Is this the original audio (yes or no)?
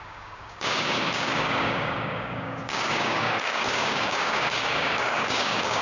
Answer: no